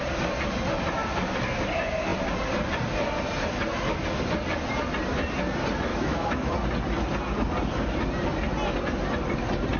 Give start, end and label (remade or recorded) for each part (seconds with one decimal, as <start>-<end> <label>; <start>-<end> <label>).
0.0-5.9 recorded; 5.9-6.5 remade; 6.5-9.8 recorded